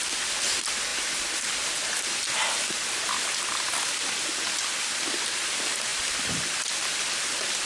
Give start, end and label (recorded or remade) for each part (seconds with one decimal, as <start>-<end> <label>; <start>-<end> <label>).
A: 0.0-7.7 recorded